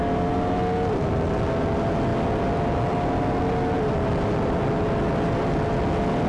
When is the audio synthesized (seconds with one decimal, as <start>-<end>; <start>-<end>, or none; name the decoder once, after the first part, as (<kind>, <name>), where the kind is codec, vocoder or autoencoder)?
none